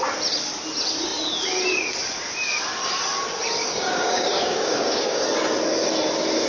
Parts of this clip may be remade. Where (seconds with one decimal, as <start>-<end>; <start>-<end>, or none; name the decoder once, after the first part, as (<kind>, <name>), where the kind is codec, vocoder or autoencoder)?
3.6-5.2 (codec, DAC)